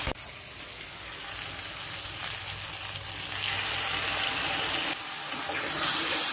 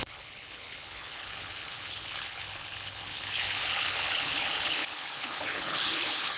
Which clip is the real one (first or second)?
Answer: first